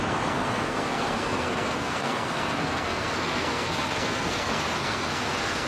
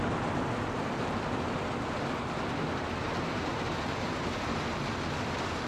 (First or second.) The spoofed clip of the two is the first